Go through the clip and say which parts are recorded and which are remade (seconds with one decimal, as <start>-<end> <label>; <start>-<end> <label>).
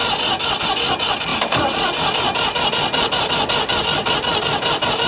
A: 0.0-1.3 recorded; 1.3-1.8 remade; 1.8-4.3 recorded; 4.3-5.1 remade